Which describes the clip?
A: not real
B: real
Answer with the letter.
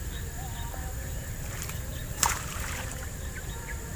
A